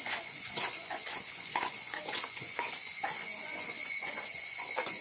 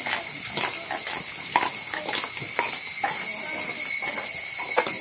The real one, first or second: second